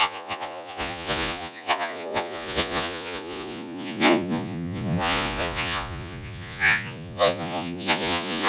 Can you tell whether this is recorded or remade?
remade